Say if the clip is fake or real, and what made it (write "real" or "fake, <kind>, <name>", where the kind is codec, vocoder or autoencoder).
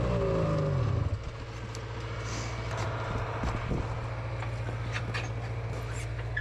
real